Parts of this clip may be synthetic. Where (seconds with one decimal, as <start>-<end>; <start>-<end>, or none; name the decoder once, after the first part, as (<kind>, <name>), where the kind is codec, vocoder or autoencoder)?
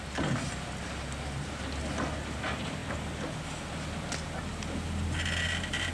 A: none